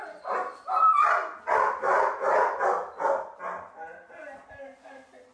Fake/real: real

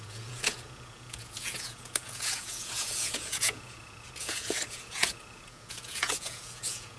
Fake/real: fake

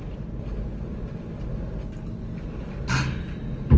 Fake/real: real